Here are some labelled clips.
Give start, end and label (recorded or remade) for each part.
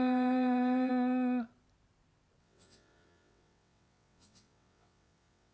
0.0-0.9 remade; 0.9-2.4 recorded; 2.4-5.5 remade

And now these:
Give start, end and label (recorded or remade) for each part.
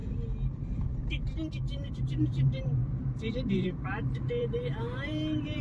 0.0-1.9 recorded; 1.9-5.6 remade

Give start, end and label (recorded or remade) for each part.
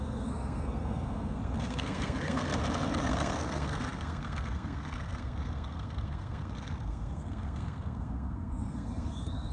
0.0-2.5 remade; 2.5-3.0 recorded; 3.0-9.5 remade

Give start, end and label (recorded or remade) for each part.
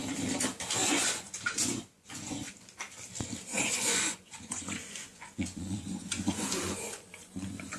0.0-0.8 recorded; 0.8-2.5 remade; 2.5-3.5 recorded; 3.5-7.8 remade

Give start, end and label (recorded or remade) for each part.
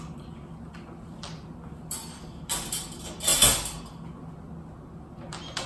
0.0-5.7 recorded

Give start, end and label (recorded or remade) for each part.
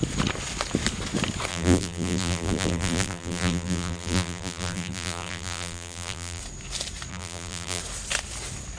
0.0-1.5 recorded; 1.5-6.4 remade; 6.4-7.1 recorded; 7.1-7.8 remade; 7.8-8.8 recorded